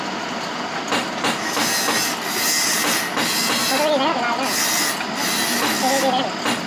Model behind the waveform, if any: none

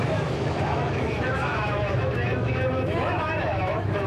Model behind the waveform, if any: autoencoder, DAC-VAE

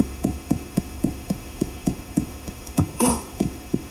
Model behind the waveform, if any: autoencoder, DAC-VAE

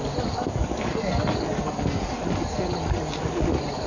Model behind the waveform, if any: none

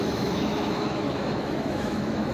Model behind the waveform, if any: autoencoder, DAC-VAE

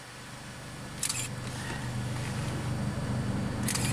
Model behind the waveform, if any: none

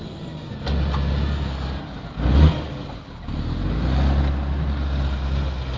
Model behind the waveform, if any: none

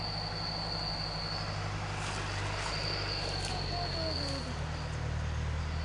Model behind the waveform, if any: none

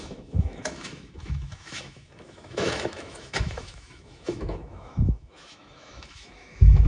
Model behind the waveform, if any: autoencoder, DAC-VAE